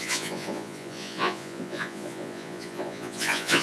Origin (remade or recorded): remade